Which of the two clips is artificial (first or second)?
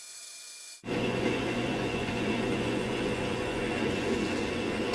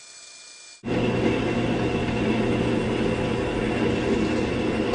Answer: first